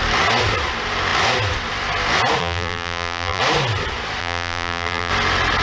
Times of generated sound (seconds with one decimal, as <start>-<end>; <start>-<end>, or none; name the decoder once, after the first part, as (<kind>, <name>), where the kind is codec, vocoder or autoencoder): 2.4-3.4 (vocoder, BigVGAN v2); 4.2-5.1